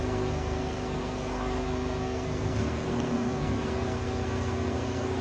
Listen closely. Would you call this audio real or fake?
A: fake